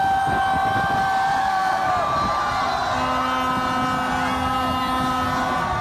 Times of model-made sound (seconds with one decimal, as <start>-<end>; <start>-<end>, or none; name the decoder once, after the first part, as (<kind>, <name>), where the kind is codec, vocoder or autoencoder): 1.4-1.9 (codec, SNAC)